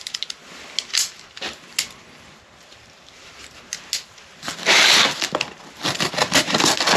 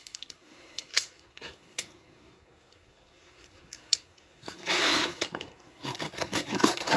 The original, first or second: first